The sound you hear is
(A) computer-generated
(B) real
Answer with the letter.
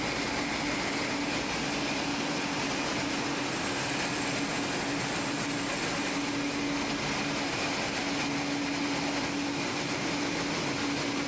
B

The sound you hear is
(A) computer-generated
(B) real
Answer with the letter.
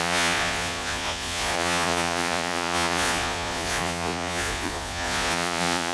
A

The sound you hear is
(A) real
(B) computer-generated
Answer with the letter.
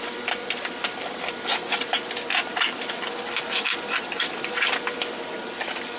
A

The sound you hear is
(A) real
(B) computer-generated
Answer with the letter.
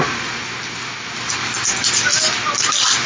A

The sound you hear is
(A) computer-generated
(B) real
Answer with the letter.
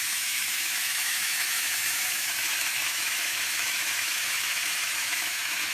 A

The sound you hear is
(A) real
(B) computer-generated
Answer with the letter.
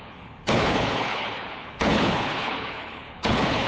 B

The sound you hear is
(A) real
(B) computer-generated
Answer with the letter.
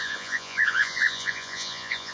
B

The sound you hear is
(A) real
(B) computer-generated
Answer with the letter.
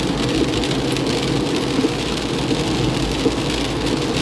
A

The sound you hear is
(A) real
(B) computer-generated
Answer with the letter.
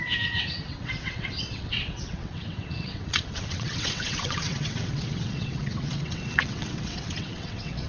B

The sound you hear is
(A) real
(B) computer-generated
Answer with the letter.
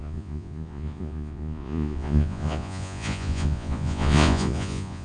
B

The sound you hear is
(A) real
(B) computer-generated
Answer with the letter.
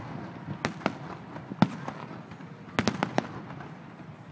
A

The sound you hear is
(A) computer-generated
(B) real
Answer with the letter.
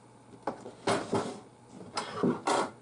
B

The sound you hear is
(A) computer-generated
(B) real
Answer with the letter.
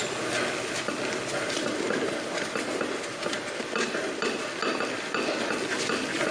B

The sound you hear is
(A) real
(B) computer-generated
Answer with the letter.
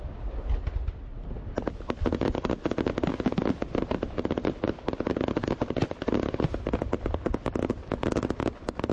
A